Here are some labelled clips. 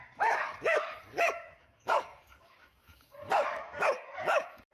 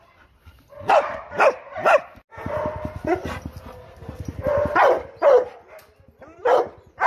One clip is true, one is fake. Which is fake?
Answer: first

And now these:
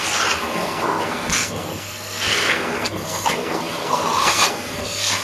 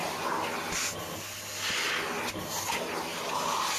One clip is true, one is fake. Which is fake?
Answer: first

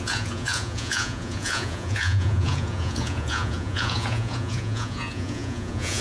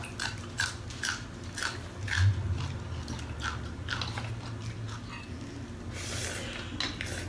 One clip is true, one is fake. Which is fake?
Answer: first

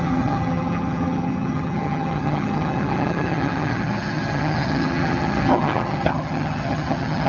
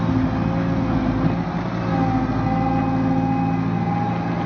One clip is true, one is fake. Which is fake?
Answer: first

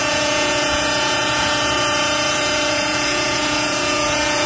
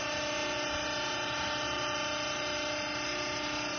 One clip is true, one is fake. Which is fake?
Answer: first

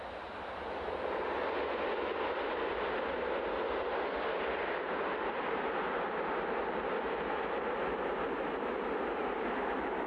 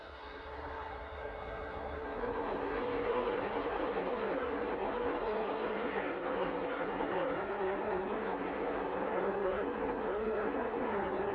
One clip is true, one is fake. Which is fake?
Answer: second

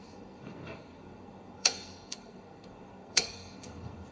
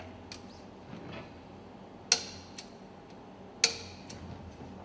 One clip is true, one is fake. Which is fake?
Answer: first